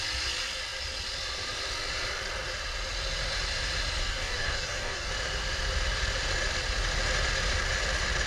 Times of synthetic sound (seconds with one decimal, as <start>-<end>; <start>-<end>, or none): 4.0-5.1